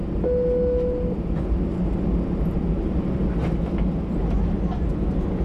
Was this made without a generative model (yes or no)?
yes